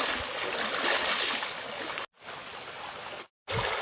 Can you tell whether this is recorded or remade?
recorded